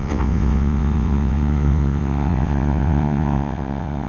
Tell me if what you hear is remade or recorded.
remade